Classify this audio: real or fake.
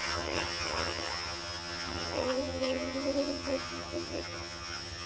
fake